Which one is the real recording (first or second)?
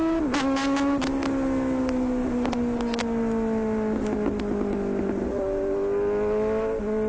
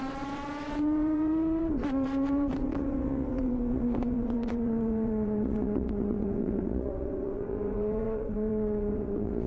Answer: first